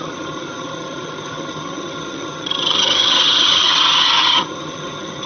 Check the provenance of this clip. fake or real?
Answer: fake